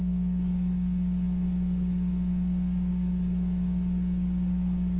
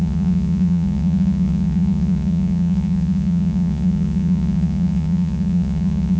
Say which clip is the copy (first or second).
second